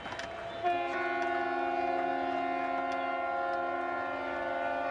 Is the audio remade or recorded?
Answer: recorded